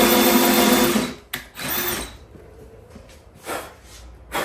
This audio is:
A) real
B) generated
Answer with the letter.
A